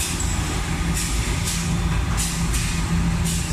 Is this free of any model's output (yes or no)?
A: yes